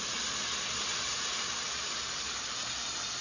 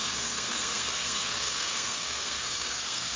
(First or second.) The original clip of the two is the first